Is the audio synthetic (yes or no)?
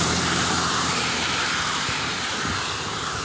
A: yes